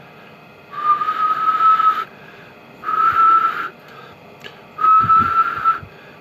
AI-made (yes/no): no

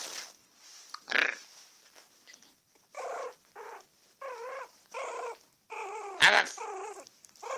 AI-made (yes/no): no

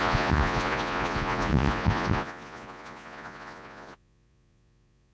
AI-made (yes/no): yes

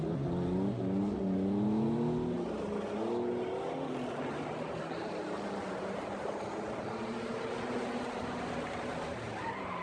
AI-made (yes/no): no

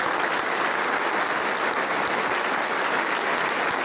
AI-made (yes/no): no